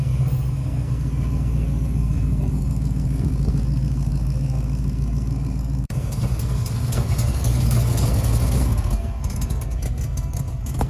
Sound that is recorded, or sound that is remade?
remade